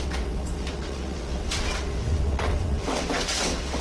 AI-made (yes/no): yes